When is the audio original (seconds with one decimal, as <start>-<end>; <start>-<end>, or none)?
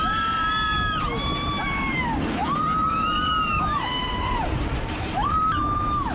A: 0.0-1.3; 2.0-2.4; 3.6-4.0; 5.4-6.1